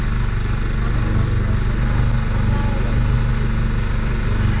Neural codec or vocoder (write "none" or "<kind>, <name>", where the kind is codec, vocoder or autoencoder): none